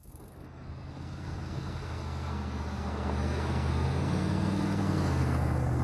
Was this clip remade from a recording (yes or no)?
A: yes